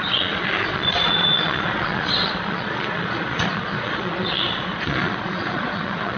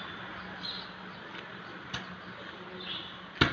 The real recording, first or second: second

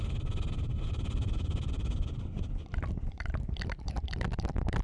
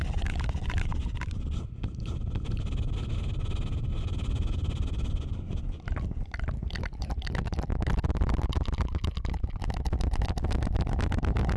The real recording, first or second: second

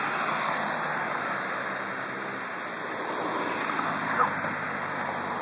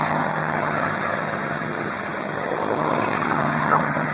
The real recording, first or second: first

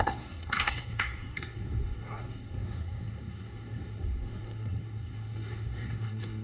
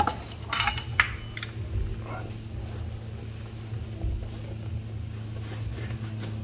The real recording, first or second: second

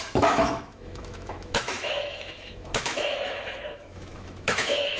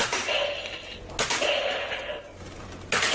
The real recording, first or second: second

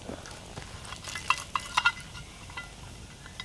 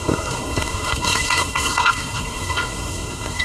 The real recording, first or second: first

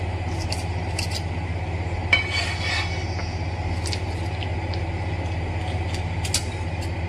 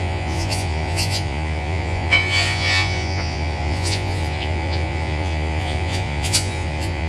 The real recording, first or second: first